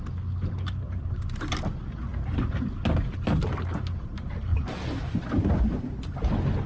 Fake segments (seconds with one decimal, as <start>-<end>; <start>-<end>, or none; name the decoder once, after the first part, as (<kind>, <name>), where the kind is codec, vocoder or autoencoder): 4.5-5.2 (vocoder, BigVGAN v2)